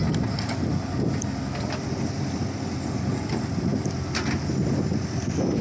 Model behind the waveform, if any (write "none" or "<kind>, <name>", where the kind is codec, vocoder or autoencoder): none